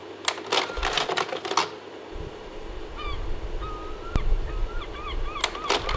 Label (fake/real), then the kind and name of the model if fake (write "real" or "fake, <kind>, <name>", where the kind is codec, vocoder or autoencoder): real